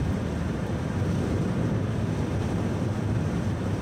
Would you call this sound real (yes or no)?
no